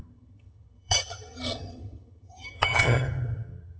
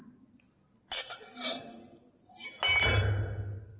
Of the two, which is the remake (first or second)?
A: first